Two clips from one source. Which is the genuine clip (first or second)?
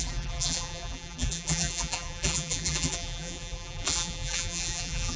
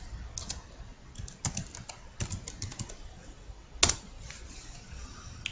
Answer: second